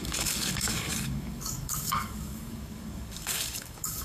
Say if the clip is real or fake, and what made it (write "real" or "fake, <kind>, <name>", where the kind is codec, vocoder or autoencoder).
fake, codec, DAC